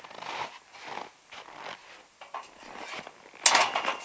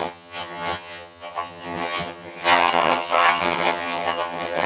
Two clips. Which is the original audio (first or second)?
first